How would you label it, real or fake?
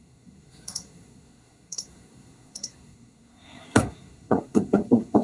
fake